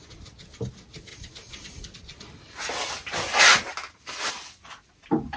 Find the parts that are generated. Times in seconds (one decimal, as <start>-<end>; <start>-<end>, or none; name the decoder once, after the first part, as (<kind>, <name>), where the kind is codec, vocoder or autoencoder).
none